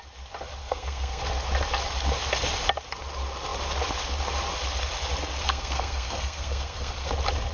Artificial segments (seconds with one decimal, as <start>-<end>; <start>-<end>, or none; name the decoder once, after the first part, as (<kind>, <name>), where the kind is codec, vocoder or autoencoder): 0.6-1.2 (codec, SNAC); 5.4-7.1